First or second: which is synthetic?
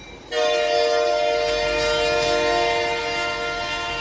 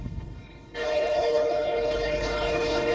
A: second